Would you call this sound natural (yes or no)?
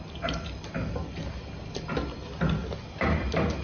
yes